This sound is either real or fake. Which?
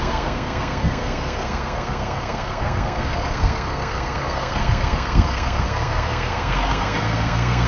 fake